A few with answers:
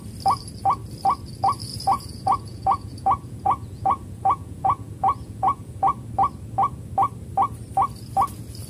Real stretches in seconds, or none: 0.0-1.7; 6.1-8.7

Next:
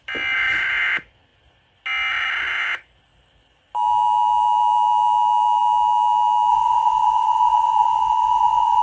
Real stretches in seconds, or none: 0.0-6.5

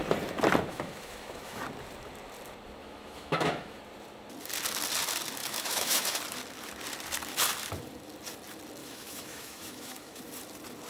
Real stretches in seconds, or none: 0.0-0.7; 1.6-2.8; 3.8-5.4; 6.2-8.8; 10.2-10.9